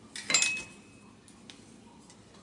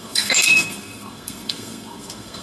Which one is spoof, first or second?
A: second